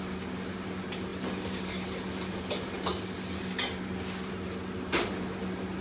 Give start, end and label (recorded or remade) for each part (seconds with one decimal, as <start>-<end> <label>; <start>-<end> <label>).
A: 0.0-5.8 recorded